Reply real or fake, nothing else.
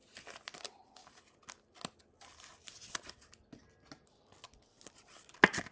real